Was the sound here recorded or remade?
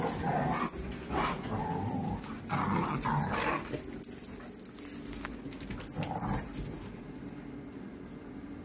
recorded